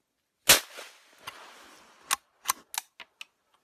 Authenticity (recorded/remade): recorded